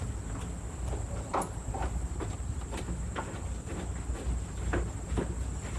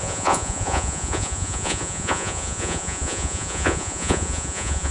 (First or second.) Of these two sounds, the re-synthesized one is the second